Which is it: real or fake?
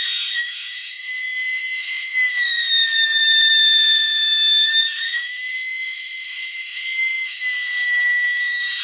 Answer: fake